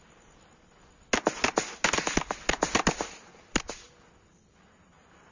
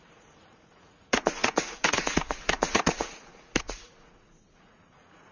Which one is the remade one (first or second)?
second